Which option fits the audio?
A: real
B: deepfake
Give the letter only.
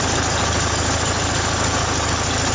A